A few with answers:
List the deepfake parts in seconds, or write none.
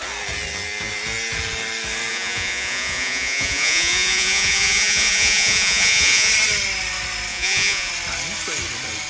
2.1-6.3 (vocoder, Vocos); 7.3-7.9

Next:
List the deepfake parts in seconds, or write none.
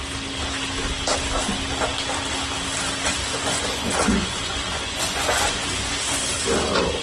3.1-6.3 (vocoder, Vocos)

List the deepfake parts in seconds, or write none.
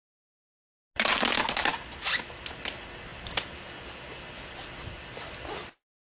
none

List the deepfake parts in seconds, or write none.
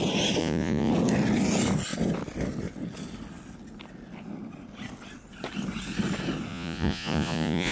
0.4-0.9 (vocoder, Vocos); 6.5-7.7